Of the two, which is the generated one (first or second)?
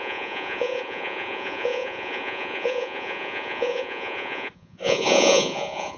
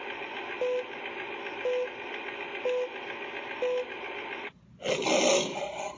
first